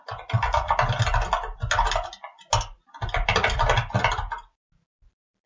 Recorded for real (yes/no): yes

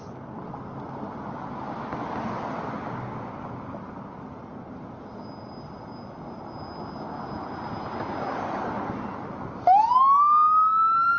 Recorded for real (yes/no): yes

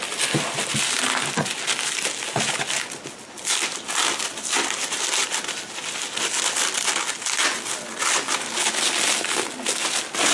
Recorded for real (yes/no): yes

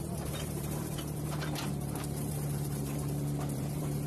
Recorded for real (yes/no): no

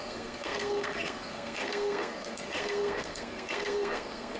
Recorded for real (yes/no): no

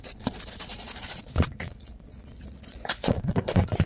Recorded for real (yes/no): no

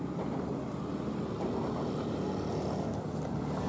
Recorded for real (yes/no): yes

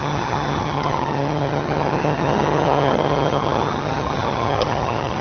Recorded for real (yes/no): no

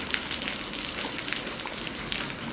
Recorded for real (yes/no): yes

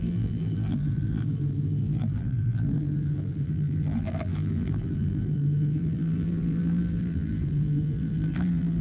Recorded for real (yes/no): no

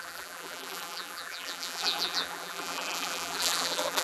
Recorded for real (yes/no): no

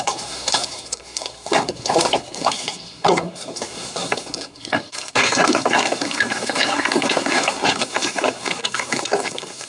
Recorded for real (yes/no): no